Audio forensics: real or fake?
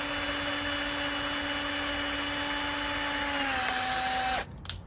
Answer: real